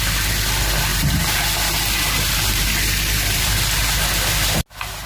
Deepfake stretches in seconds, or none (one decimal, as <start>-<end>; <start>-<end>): 0.9-3.5